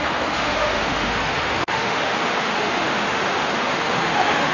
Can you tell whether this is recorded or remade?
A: remade